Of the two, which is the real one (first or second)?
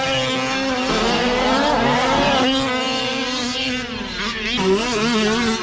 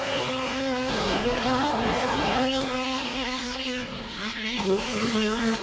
first